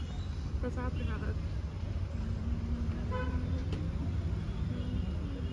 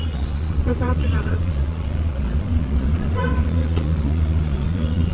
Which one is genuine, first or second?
first